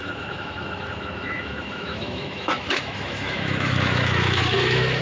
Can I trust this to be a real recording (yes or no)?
no